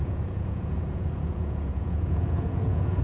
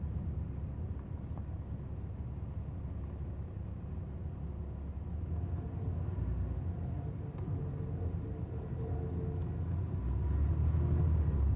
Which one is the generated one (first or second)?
first